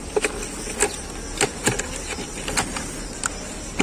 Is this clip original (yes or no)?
yes